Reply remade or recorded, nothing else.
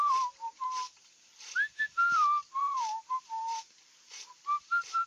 remade